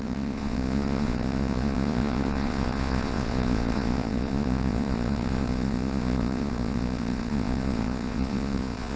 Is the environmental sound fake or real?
fake